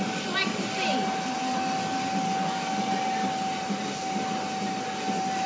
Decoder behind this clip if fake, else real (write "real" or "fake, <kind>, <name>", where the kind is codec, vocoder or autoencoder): real